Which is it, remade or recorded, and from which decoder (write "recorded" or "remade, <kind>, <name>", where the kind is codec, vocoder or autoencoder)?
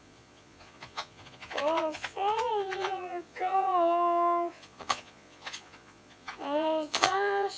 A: remade, vocoder, Vocos